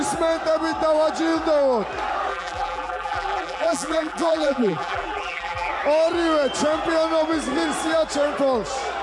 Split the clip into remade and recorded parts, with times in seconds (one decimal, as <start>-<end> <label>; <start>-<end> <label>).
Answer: 0.0-2.3 recorded; 2.3-5.7 remade; 5.7-9.0 recorded